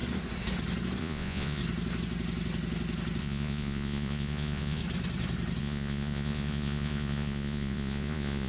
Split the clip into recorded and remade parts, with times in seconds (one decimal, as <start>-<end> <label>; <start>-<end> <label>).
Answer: 0.0-1.0 recorded; 1.0-1.6 remade; 1.6-3.2 recorded; 3.2-4.8 remade; 4.8-5.6 recorded; 5.6-8.5 remade